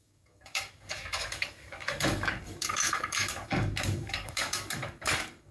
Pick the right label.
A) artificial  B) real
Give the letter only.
A